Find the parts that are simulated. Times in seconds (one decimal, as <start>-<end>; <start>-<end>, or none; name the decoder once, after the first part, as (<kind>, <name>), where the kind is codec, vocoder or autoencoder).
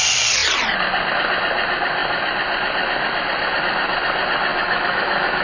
4.5-5.4 (autoencoder, DAC-VAE)